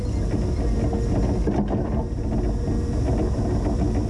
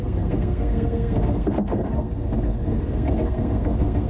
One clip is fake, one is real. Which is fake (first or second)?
second